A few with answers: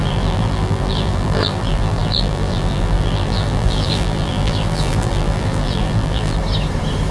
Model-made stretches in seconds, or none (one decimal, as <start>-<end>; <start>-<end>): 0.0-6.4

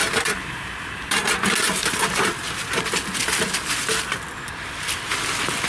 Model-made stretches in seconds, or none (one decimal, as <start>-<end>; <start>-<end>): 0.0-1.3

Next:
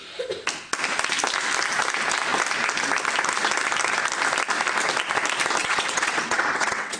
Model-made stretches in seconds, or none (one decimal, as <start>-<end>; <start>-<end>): 5.6-7.0

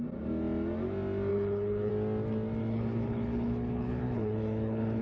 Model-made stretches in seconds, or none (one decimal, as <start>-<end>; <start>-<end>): 1.3-1.9; 2.6-5.0

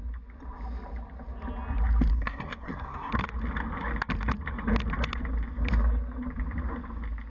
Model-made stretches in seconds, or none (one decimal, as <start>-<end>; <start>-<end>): 2.1-3.1